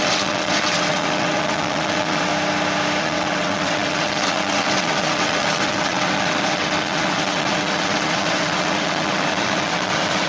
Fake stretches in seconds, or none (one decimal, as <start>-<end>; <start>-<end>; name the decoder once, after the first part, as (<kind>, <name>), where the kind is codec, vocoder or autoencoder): 0.0-2.3 (vocoder, WaveNeXt); 3.0-10.3